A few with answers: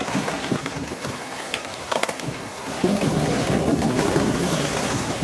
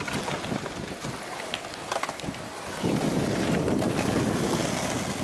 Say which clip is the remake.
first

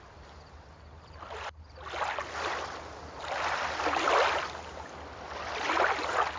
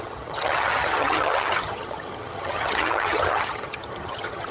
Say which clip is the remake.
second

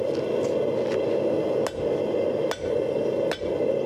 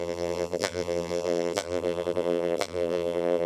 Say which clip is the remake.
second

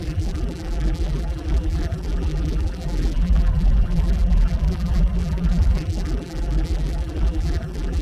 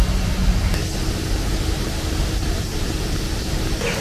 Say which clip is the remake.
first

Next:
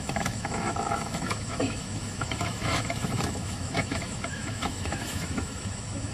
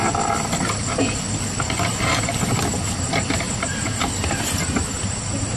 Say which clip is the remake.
first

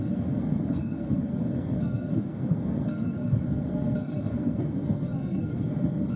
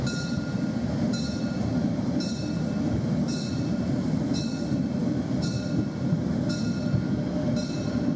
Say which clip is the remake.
first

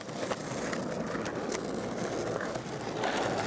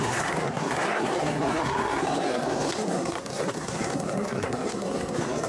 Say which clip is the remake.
second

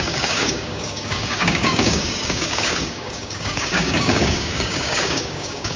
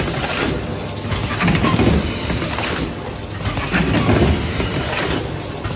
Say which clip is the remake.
first